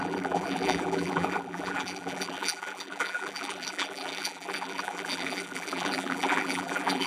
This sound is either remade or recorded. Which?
remade